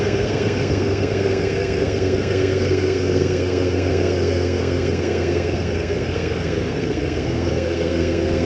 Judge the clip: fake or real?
fake